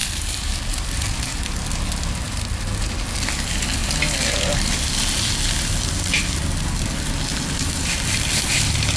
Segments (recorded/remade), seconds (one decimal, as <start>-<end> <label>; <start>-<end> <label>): 0.0-0.9 remade; 0.9-3.8 recorded; 3.8-5.3 remade; 5.3-9.0 recorded